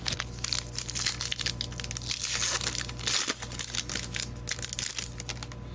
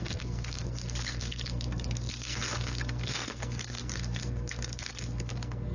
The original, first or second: first